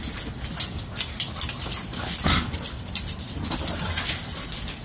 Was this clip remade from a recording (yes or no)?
no